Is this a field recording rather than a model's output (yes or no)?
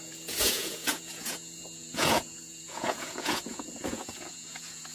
no